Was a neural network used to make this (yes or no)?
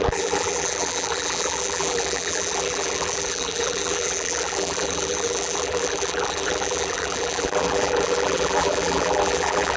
yes